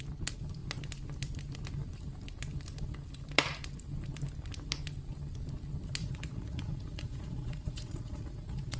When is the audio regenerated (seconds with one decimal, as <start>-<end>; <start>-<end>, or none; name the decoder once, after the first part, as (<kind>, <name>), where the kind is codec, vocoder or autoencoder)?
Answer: 6.0-8.8 (vocoder, Vocos)